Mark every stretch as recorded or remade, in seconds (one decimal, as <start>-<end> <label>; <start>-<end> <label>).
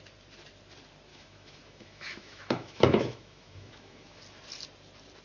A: 0.0-1.1 recorded; 1.1-4.2 remade; 4.2-5.2 recorded